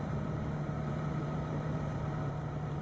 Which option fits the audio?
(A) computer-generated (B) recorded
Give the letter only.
A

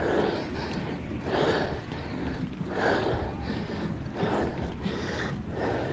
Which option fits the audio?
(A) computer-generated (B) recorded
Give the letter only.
B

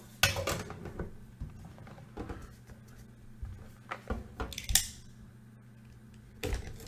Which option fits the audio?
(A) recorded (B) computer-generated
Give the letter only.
A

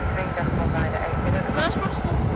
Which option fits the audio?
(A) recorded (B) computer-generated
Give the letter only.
A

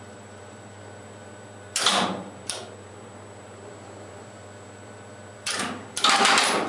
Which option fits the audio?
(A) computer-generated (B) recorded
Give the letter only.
A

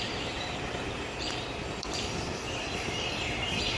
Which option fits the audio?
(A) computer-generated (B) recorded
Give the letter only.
A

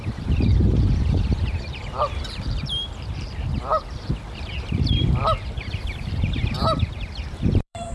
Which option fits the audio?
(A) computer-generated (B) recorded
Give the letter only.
A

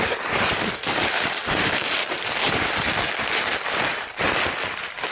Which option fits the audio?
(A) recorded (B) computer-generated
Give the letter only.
B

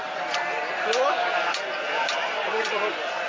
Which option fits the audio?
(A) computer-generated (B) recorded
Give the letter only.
A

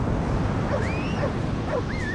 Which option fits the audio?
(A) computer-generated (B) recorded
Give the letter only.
B